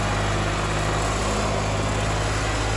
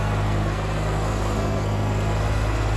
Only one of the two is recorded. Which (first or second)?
first